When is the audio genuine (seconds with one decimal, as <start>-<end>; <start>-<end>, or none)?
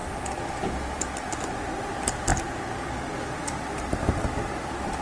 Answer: 0.0-5.0